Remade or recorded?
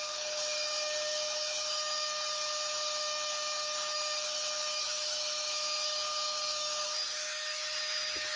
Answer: remade